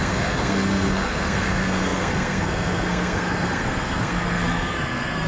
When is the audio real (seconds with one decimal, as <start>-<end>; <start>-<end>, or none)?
none